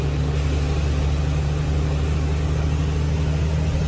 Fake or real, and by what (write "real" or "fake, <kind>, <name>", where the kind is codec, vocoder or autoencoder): real